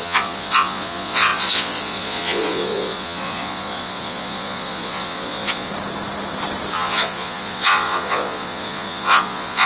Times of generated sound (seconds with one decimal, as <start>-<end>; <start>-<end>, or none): 0.0-5.7; 6.7-9.7